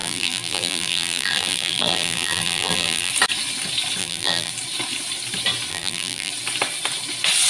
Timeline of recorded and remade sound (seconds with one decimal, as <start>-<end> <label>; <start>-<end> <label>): 0.0-3.1 remade; 3.1-4.0 recorded; 4.0-4.5 remade; 4.5-5.7 recorded; 5.7-6.3 remade; 6.3-7.5 recorded